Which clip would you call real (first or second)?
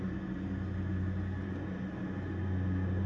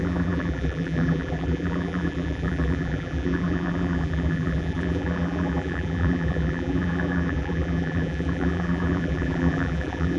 first